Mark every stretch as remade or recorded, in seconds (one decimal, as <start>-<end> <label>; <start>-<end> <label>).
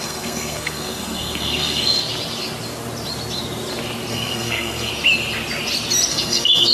0.0-2.0 remade; 2.0-4.1 recorded; 4.1-4.9 remade; 4.9-6.1 recorded; 6.1-6.7 remade